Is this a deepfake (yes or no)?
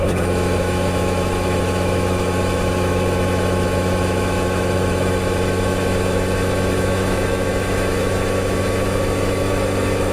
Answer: yes